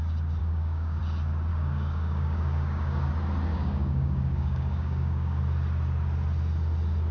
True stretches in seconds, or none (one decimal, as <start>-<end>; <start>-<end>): 0.0-0.4; 1.0-1.5; 3.1-3.5; 5.4-7.1